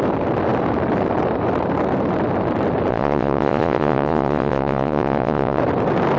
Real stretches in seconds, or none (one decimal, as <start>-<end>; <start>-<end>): 0.0-2.9; 5.6-6.2